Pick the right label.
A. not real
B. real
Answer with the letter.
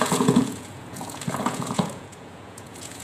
A